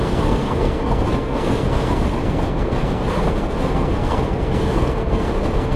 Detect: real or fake fake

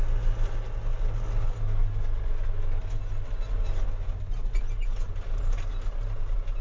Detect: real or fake real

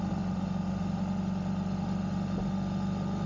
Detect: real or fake real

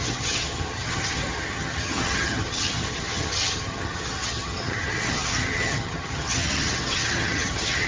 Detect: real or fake fake